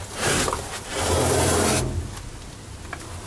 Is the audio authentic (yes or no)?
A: yes